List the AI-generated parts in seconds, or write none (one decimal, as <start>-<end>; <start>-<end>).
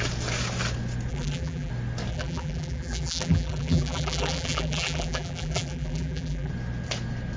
1.1-1.7; 2.1-6.5